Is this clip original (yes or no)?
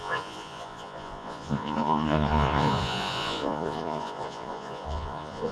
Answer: no